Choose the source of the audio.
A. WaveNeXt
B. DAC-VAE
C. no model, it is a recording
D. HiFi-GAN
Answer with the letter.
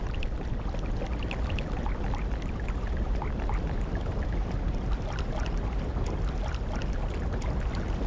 C